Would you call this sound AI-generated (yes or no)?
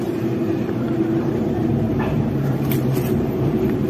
yes